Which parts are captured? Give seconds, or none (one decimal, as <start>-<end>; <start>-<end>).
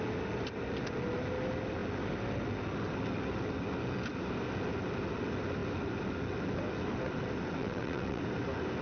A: 0.0-7.6; 8.2-8.8